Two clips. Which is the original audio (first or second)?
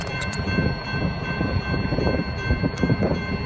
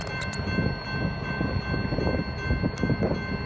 second